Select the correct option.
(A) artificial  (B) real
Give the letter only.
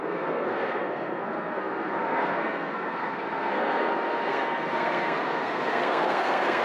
A